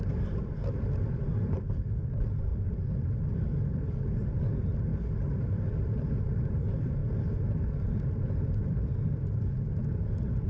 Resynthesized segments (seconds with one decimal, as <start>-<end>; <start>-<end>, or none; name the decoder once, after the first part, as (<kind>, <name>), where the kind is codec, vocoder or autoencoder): 0.0-2.5 (vocoder, BigVGAN v2); 3.3-4.9; 6.2-7.0; 8.5-10.5